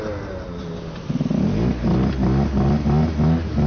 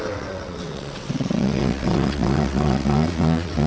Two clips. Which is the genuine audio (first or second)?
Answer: first